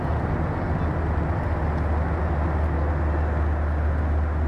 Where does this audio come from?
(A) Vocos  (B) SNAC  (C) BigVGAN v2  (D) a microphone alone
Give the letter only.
D